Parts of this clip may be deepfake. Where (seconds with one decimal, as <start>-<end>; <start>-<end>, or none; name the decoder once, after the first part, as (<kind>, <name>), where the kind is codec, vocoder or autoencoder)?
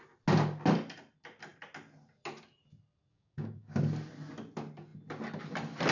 3.1-3.8 (codec, DAC)